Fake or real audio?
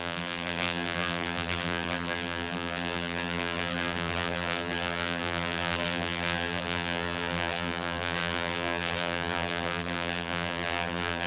fake